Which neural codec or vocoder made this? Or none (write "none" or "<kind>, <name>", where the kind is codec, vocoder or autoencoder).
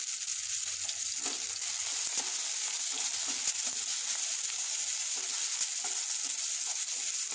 none